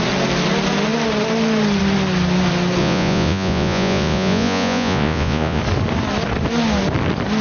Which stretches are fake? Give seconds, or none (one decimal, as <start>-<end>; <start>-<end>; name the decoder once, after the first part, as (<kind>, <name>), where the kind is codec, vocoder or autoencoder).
2.8-5.6 (vocoder, Vocos)